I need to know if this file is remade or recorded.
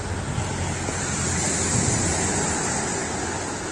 recorded